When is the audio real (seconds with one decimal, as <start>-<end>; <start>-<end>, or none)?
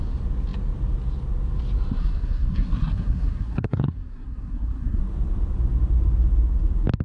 0.0-2.0; 5.0-7.0